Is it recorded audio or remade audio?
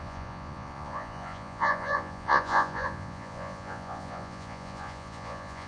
remade